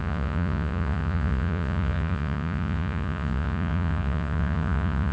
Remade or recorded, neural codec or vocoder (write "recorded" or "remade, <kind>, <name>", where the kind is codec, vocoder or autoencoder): remade, vocoder, Vocos